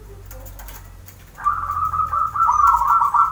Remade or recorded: recorded